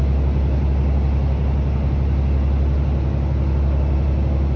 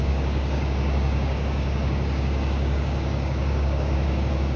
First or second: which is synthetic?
second